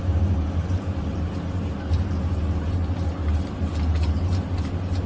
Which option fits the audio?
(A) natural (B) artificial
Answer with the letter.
A